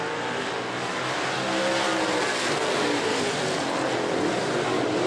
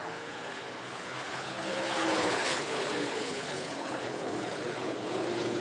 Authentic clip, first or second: first